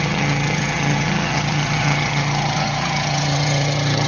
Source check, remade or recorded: remade